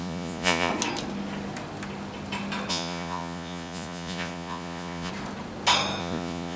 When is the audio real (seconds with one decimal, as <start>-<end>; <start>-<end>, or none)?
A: 0.7-2.7; 5.1-6.0